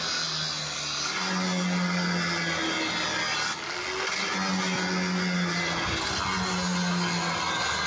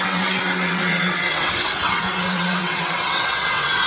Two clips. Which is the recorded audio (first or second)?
first